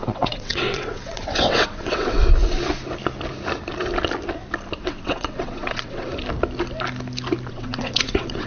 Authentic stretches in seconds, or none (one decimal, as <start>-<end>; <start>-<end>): 2.2-4.8; 6.1-7.5